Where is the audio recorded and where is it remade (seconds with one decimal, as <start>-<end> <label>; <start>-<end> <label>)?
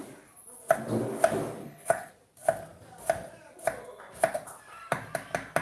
0.0-1.6 recorded; 1.6-2.1 remade; 2.1-5.6 recorded